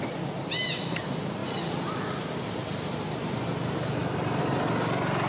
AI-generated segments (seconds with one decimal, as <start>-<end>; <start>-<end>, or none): none